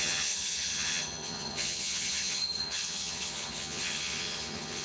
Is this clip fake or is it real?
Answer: fake